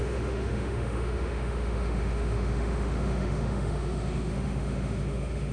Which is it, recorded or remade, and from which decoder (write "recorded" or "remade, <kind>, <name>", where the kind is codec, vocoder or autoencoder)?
remade, autoencoder, DAC-VAE